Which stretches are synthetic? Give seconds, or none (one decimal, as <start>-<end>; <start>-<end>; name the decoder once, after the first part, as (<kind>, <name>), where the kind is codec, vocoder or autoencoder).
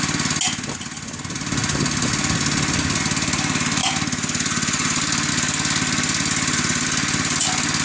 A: none